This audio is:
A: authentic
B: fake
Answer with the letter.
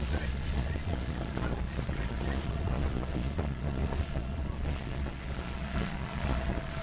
B